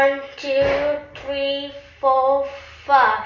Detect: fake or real real